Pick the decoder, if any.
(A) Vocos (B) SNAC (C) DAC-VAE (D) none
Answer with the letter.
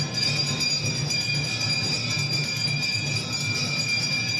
D